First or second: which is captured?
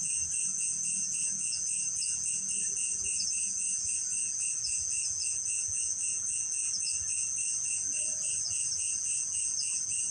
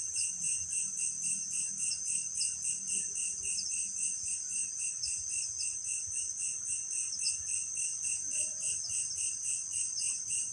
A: second